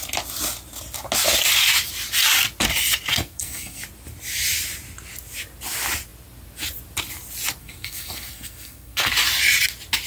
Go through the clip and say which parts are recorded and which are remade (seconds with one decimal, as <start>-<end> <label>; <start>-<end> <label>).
0.0-3.1 recorded; 3.1-3.8 remade; 3.8-7.6 recorded; 7.6-9.1 remade; 9.1-10.1 recorded